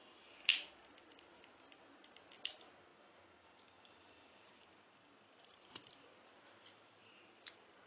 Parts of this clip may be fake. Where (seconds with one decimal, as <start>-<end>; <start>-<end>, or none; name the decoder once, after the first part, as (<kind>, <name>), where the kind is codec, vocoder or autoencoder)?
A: 2.9-7.5 (vocoder, BigVGAN v2)